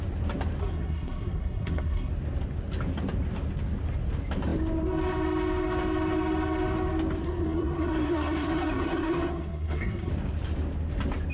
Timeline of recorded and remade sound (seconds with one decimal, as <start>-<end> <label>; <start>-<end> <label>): 0.0-0.6 recorded; 0.6-2.1 remade; 2.1-7.2 recorded; 7.2-10.1 remade; 10.1-11.3 recorded